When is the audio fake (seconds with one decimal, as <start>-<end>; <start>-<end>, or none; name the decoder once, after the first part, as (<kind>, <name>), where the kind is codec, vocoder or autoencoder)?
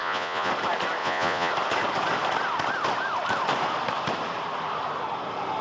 0.0-0.5 (vocoder, Vocos); 1.0-1.5